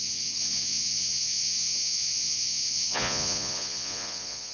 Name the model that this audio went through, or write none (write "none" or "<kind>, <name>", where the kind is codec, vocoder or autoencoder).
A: vocoder, Vocos